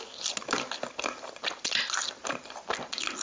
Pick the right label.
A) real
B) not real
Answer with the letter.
A